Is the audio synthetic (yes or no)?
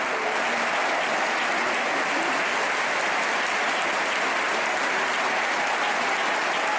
no